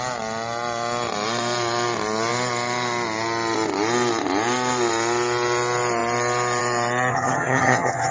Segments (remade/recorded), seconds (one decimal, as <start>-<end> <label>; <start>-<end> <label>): 0.0-7.1 recorded; 7.1-8.1 remade